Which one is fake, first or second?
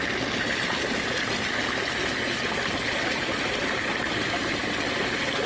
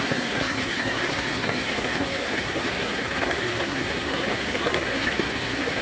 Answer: second